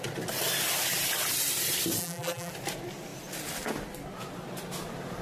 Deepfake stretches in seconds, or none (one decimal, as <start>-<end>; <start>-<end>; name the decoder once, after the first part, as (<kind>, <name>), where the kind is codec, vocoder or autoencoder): 2.0-2.5 (vocoder, BigVGAN v2)

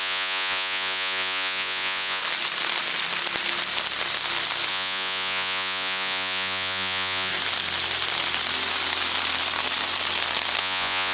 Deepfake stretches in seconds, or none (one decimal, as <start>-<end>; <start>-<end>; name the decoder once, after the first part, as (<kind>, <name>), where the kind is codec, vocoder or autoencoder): 0.0-2.2 (vocoder, Vocos); 4.7-7.3; 10.6-11.1

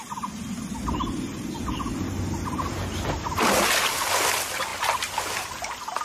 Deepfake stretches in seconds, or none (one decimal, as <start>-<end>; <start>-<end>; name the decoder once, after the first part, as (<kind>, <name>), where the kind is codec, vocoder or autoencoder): none